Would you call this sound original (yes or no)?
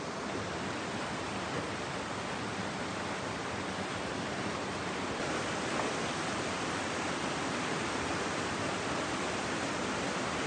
yes